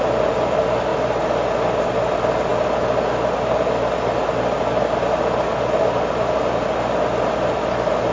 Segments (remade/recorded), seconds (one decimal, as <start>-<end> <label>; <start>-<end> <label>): 0.0-8.1 recorded

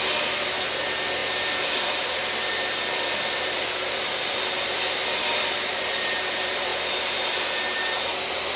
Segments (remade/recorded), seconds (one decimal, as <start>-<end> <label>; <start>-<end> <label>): 0.0-1.2 recorded; 1.2-6.0 remade; 6.0-8.6 recorded

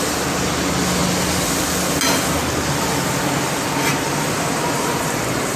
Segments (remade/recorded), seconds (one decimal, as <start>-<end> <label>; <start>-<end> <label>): 0.0-3.9 recorded; 3.9-5.6 remade

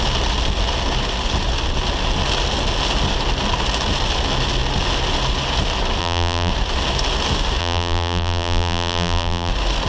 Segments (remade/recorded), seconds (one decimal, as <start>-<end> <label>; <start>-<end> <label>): 0.0-6.0 recorded; 6.0-6.5 remade; 6.5-7.6 recorded; 7.6-9.5 remade; 9.5-9.9 recorded

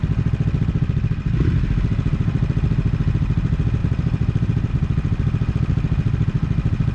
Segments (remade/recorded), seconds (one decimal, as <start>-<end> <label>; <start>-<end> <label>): 0.0-3.8 recorded; 3.8-4.7 remade; 4.7-6.9 recorded

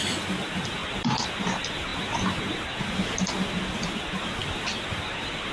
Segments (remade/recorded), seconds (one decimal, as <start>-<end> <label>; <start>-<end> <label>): 0.0-0.8 remade; 0.8-1.4 recorded; 1.4-1.9 remade; 1.9-2.8 recorded; 2.8-4.4 remade; 4.4-5.0 recorded; 5.0-5.5 remade